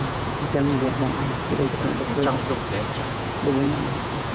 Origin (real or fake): fake